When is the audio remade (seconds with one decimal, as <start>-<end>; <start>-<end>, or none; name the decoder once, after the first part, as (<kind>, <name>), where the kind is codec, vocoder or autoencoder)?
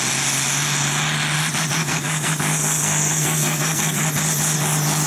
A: 1.8-4.0 (codec, SNAC)